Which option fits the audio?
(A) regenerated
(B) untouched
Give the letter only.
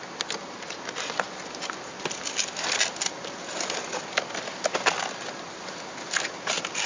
B